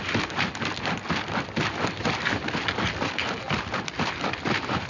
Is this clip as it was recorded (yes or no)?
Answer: yes